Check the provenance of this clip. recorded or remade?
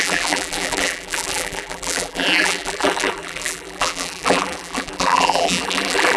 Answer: remade